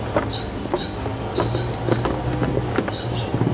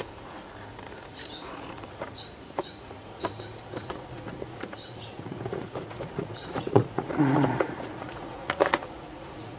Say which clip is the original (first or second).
first